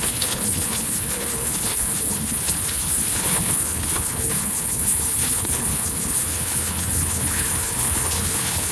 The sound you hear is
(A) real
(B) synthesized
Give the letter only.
B